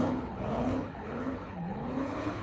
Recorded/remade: remade